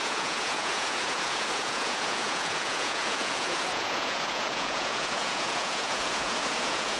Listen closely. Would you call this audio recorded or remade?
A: remade